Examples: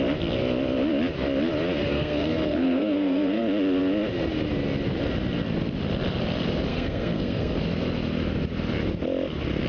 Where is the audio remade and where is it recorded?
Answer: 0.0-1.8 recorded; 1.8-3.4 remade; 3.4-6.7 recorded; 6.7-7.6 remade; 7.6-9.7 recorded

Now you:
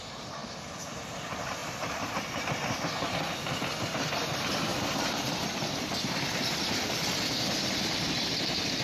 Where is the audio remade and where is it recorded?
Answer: 0.0-1.6 recorded; 1.6-2.4 remade; 2.4-4.7 recorded; 4.7-5.9 remade; 5.9-8.8 recorded

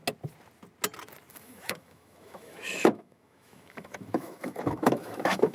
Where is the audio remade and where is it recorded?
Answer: 0.0-1.3 recorded; 1.3-5.5 remade

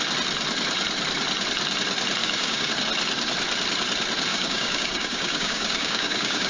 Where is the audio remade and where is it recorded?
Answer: 0.0-2.2 recorded; 2.2-2.7 remade; 2.7-4.3 recorded; 4.3-6.5 remade